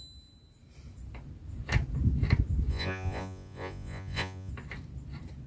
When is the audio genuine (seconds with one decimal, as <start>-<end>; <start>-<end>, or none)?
0.0-2.7; 4.5-5.5